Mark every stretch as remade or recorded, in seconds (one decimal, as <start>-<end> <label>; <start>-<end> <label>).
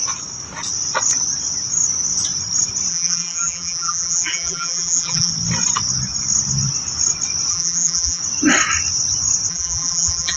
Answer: 0.0-2.9 recorded; 2.9-5.3 remade; 5.3-7.5 recorded; 7.5-8.2 remade; 8.2-9.5 recorded; 9.5-10.4 remade